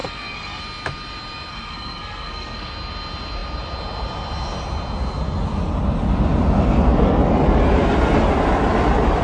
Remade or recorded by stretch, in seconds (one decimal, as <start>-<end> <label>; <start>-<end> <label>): 0.0-0.6 remade; 0.6-1.5 recorded; 1.5-2.7 remade; 2.7-9.2 recorded